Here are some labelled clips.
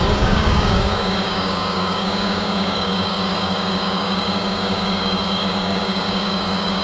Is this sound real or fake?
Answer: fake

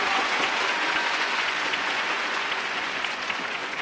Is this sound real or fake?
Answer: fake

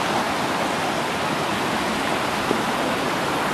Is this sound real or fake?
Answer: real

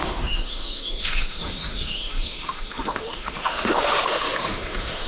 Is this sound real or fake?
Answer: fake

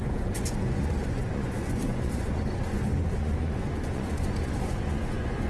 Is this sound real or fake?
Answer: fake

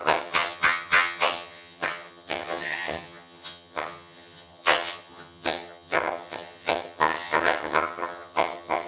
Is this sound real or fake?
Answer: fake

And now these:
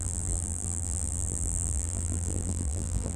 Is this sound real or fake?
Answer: fake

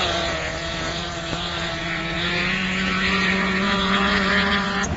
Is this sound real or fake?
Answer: fake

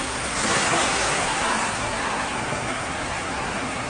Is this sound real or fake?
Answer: fake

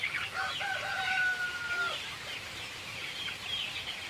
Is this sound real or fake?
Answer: fake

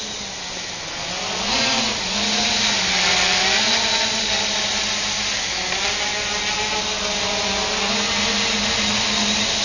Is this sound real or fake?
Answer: real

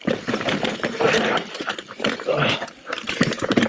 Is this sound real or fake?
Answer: fake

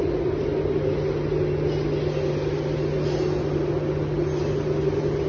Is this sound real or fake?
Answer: real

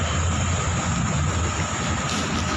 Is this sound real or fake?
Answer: real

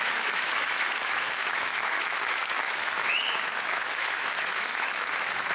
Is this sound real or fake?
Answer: fake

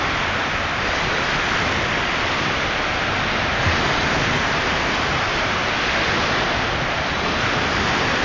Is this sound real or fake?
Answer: real